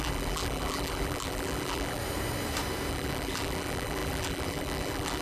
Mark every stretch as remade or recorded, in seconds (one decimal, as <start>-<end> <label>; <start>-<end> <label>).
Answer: 0.0-2.0 remade; 2.0-2.9 recorded; 2.9-5.2 remade